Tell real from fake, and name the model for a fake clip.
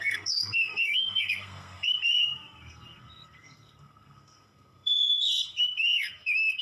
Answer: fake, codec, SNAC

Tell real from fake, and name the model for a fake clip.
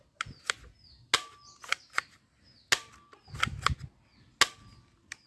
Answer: real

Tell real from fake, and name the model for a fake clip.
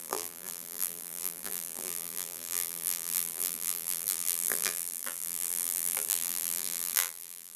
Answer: fake, vocoder, BigVGAN v2